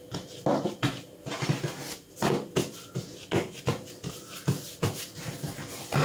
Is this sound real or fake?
real